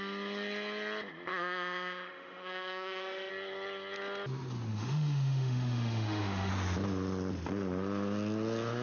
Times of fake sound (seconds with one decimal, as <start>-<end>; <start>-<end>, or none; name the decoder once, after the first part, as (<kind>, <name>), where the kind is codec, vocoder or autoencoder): 1.3-3.3 (autoencoder, DAC-VAE); 4.7-6.5